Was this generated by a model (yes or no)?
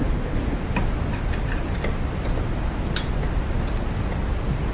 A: no